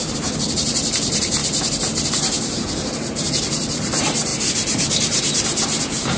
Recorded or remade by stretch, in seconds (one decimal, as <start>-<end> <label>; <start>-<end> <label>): 0.0-1.4 remade; 1.4-2.1 recorded; 2.1-6.2 remade